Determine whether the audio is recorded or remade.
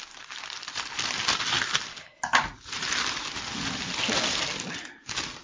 recorded